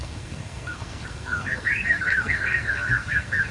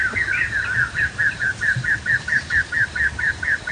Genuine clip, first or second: second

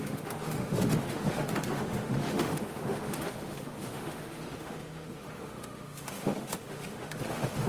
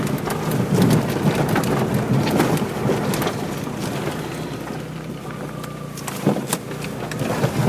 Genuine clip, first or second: second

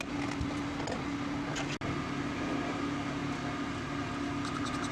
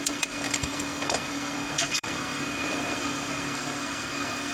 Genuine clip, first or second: first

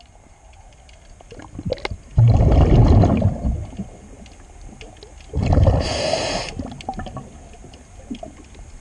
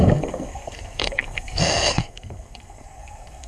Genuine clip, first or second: first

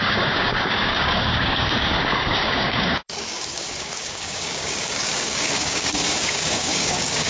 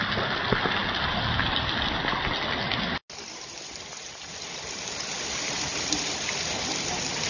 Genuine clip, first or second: second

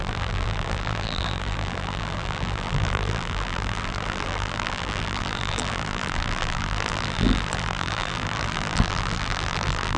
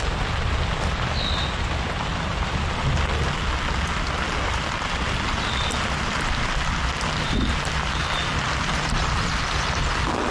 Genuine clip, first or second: second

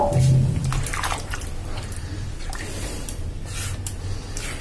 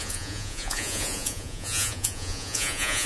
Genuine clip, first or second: first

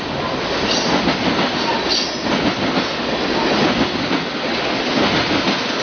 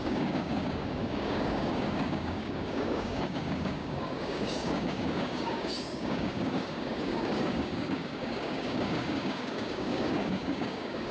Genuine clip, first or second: first